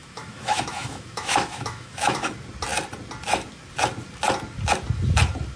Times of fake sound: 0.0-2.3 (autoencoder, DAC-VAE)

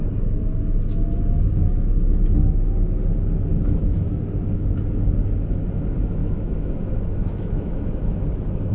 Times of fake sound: 3.5-4.2 (autoencoder, DAC-VAE); 6.2-8.7

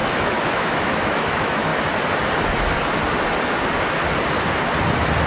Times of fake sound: 0.0-1.7 (autoencoder, DAC-VAE)

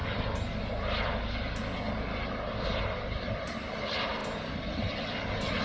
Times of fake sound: none

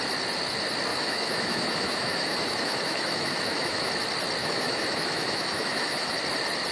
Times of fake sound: 0.9-3.9 (autoencoder, DAC-VAE); 4.4-6.2